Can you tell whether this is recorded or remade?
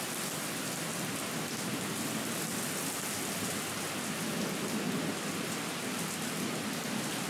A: recorded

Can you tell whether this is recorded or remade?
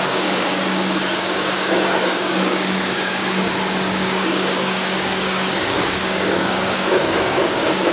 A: remade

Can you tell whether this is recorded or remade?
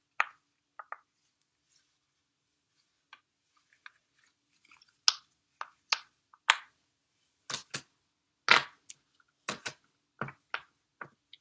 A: recorded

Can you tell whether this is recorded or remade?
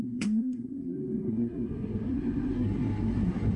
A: remade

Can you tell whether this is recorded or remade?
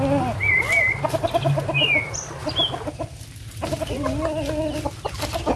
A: recorded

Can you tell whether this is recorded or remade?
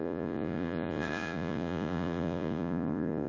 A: remade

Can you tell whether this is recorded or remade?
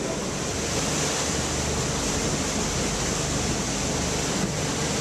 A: recorded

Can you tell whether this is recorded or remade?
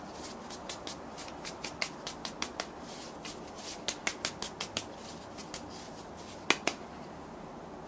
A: recorded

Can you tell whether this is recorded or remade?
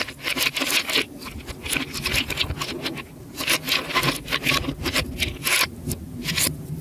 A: recorded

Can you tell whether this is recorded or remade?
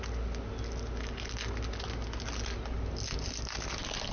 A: recorded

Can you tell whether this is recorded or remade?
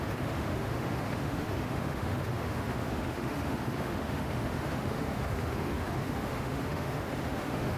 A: remade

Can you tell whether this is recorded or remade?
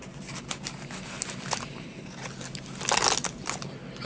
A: recorded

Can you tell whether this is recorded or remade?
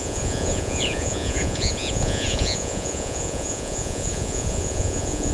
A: remade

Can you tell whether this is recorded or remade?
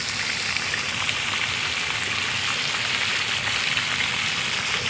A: recorded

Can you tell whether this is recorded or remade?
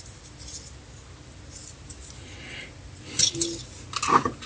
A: recorded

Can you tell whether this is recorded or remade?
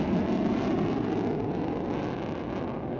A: recorded